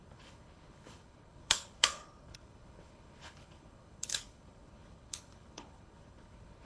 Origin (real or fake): fake